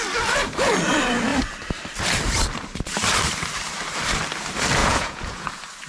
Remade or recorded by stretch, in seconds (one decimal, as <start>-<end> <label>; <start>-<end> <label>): 0.0-4.8 recorded; 4.8-5.5 remade; 5.5-5.9 recorded